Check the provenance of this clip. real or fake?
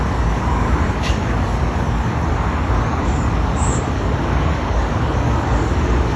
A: fake